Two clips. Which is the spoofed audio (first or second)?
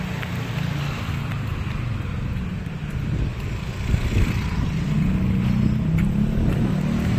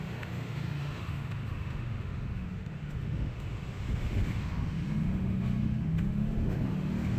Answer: second